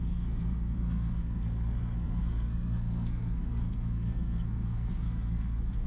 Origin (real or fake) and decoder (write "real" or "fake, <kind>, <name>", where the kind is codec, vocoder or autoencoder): fake, codec, SNAC